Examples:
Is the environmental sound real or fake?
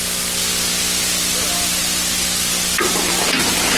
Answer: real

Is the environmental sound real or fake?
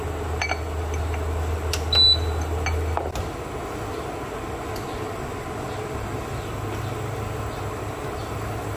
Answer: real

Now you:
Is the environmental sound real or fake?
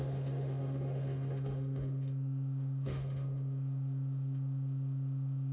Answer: fake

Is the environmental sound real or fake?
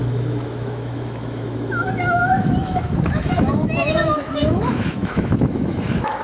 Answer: fake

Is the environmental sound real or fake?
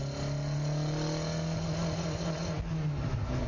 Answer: real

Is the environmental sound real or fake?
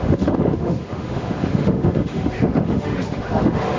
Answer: fake